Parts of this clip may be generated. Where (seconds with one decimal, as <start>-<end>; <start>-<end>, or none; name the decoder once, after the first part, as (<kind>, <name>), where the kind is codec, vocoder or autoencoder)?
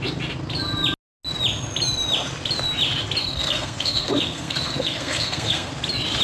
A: 3.2-5.7 (codec, SNAC)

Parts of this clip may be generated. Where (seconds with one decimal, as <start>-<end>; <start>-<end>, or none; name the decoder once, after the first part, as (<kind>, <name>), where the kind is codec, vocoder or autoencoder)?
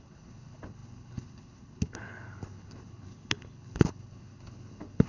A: 0.0-5.1 (codec, HILCodec)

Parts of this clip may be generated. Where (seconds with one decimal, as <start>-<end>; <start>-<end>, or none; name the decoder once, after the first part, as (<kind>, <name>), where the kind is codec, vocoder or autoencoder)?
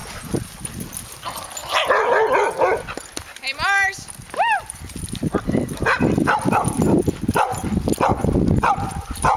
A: none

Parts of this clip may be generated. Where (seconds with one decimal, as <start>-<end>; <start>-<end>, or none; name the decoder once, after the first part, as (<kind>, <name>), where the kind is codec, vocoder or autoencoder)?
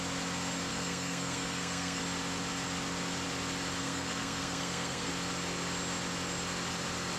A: 0.7-2.0 (codec, SNAC); 3.8-5.1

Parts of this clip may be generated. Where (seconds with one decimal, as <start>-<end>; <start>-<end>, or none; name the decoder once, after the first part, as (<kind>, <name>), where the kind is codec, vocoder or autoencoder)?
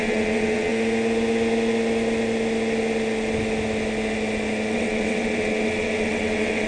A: 0.0-0.7 (vocoder, WaveNeXt); 4.7-6.7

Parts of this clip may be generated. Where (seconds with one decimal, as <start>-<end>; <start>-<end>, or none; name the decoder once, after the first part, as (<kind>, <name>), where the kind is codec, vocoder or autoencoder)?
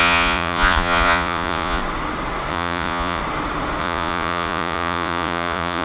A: 0.0-1.8 (vocoder, Vocos); 2.5-3.2; 3.8-5.8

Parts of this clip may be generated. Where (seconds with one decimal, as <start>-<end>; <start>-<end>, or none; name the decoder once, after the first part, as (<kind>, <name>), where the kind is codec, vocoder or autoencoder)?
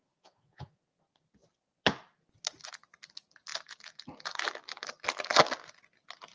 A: 0.0-0.8 (vocoder, Vocos)